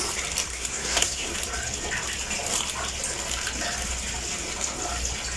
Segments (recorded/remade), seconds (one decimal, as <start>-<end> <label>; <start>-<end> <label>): 0.0-0.5 recorded; 0.5-1.3 remade; 1.3-5.4 recorded